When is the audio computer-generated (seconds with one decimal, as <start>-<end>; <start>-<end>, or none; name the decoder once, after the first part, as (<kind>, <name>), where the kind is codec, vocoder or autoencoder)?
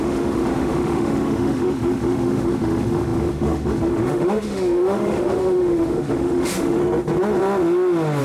0.0-6.8 (autoencoder, DAC-VAE)